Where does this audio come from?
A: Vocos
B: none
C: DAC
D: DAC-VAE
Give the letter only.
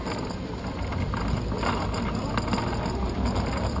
B